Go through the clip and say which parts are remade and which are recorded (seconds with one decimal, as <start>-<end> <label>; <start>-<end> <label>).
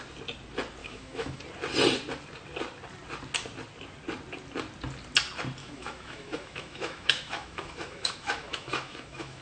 0.0-0.8 recorded; 0.8-1.4 remade; 1.4-5.6 recorded; 5.6-9.4 remade